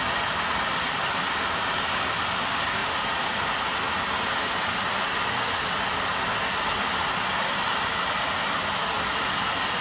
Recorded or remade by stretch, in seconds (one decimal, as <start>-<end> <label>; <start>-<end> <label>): 0.0-2.8 recorded; 2.8-3.4 remade; 3.4-9.8 recorded